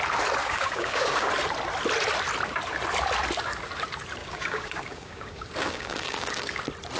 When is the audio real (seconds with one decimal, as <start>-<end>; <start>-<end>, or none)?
0.0-0.4; 1.3-4.2; 6.6-7.0